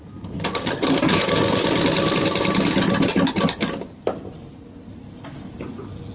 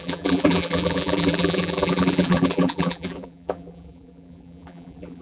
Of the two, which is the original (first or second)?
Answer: first